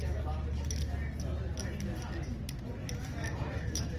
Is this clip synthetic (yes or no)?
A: no